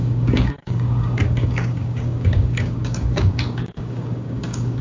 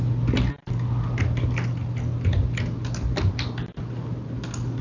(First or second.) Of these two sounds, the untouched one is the second